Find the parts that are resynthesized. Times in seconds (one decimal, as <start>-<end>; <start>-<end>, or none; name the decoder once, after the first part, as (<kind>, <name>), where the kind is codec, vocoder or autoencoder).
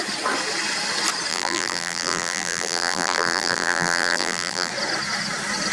1.3-4.7 (vocoder, BigVGAN v2)